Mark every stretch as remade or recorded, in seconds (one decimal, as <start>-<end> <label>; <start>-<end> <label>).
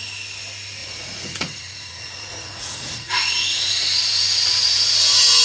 0.0-0.8 recorded; 0.8-4.0 remade; 4.0-5.4 recorded